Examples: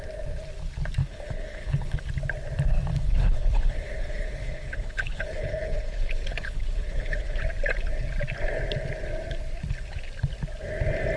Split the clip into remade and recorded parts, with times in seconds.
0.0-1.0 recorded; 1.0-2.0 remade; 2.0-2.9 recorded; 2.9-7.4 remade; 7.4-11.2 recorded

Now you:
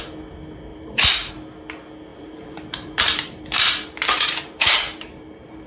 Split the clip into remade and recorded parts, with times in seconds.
0.0-0.7 recorded; 0.7-1.3 remade; 1.3-2.1 recorded; 2.1-5.7 remade

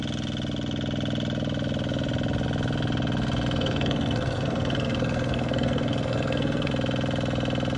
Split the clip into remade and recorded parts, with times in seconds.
0.0-3.6 recorded; 3.6-6.7 remade; 6.7-7.8 recorded

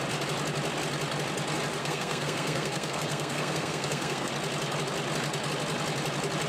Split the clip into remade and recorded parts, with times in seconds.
0.0-1.8 recorded; 1.8-4.3 remade; 4.3-6.5 recorded

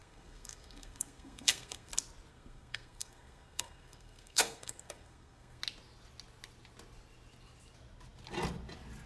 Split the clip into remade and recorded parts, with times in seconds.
0.0-1.9 remade; 1.9-2.3 recorded; 2.3-5.6 remade; 5.6-9.1 recorded